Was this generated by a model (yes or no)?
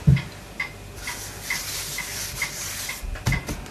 no